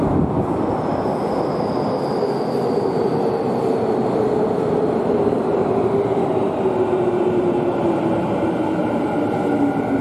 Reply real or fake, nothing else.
real